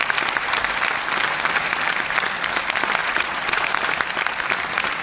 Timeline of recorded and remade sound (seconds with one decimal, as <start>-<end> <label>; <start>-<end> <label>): 0.0-3.0 recorded; 3.0-3.7 remade; 3.7-5.0 recorded